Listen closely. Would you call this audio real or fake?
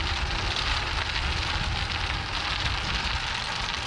real